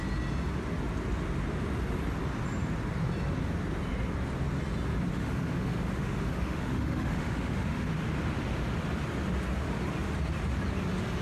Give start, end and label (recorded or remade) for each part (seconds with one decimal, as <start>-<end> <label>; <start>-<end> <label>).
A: 0.0-5.1 recorded; 5.1-7.9 remade; 7.9-11.2 recorded